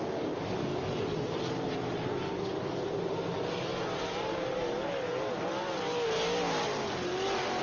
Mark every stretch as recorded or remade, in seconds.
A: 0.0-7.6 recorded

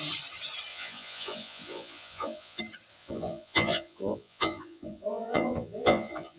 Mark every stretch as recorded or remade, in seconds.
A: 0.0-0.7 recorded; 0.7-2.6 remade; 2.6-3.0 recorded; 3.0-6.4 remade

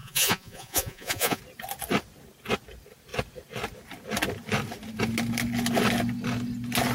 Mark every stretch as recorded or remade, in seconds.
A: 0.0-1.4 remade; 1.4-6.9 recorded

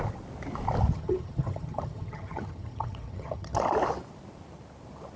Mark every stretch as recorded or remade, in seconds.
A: 0.0-0.9 recorded; 0.9-3.6 remade; 3.6-5.2 recorded

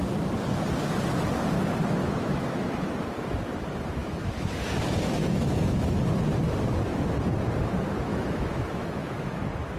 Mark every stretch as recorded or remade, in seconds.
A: 0.0-2.0 recorded; 2.0-2.9 remade; 2.9-4.0 recorded; 4.0-4.6 remade; 4.6-5.2 recorded; 5.2-6.0 remade; 6.0-8.1 recorded; 8.1-9.4 remade; 9.4-9.8 recorded

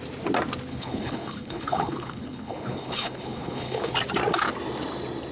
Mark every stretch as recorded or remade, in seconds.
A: 0.0-0.7 recorded; 0.7-3.9 remade; 3.9-5.3 recorded

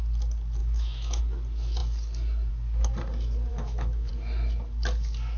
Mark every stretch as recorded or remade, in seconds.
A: 0.0-0.6 recorded; 0.6-1.2 remade; 1.2-3.5 recorded; 3.5-4.1 remade; 4.1-5.4 recorded